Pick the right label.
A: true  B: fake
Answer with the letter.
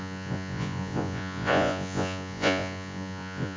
B